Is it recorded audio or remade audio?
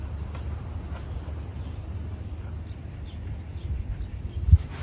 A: recorded